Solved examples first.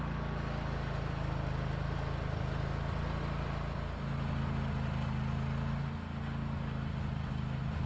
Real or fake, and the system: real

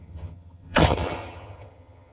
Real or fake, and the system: fake, vocoder, HiFi-GAN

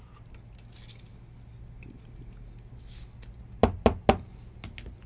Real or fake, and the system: real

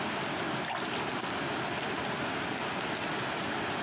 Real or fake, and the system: real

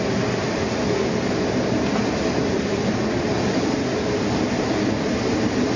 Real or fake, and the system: real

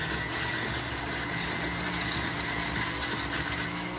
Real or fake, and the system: real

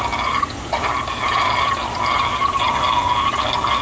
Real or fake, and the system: real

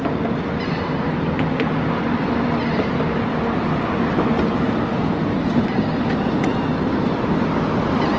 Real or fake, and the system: real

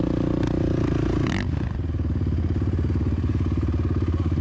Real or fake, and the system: real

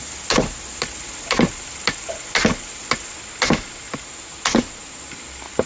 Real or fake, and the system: real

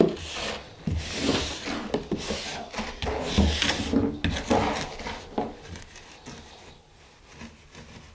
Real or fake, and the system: real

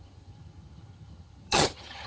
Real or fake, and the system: fake, vocoder, HiFi-GAN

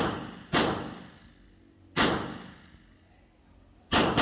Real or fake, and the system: real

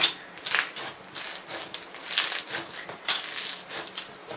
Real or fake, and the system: real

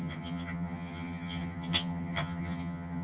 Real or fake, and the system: fake, vocoder, HiFi-GAN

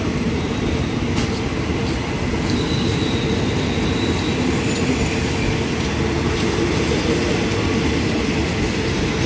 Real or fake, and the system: real